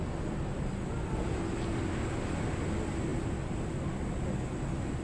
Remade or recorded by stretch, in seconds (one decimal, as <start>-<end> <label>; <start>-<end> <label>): 0.0-5.0 recorded